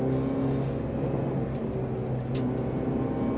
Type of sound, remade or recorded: recorded